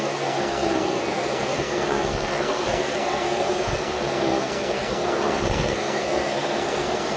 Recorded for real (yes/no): no